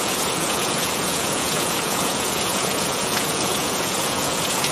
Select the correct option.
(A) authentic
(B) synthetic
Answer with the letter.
B